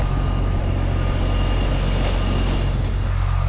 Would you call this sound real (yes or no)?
yes